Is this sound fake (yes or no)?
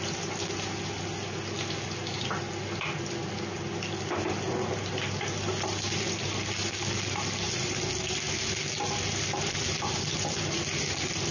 no